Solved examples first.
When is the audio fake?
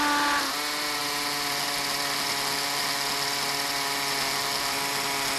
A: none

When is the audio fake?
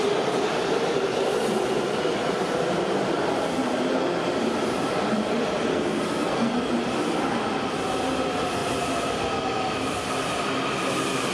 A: 5.7-6.7 (codec, SNAC)